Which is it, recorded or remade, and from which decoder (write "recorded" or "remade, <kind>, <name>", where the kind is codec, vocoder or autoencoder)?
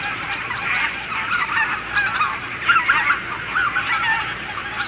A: recorded